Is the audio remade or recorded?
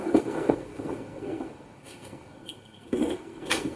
remade